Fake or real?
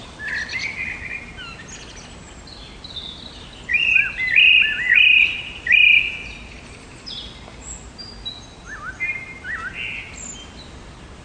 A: real